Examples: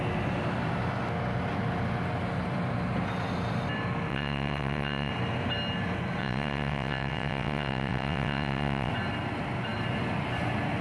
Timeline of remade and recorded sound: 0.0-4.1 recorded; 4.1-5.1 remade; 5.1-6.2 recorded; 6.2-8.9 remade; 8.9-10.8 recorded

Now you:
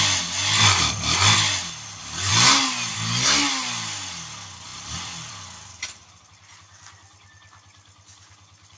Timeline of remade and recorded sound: 0.0-8.8 recorded

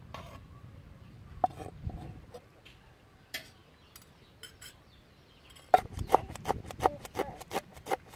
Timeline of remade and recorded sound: 0.0-3.6 remade; 3.6-4.2 recorded; 4.2-8.2 remade

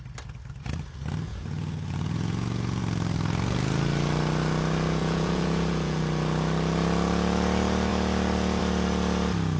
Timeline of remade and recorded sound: 0.0-1.3 recorded; 1.3-2.8 remade; 2.8-5.0 recorded; 5.0-6.0 remade; 6.0-9.6 recorded

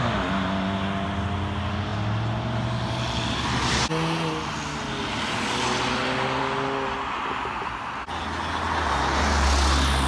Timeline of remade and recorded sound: 0.0-10.1 recorded

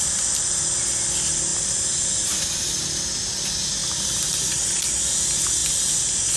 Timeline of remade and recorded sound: 0.0-6.4 recorded